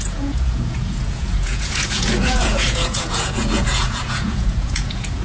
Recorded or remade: remade